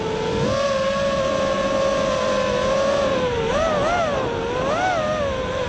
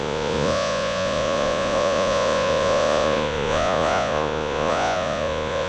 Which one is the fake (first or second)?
second